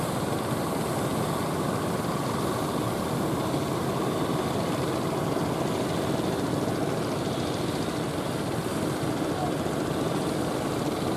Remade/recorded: recorded